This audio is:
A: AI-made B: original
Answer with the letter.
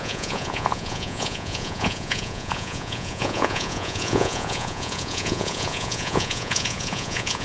A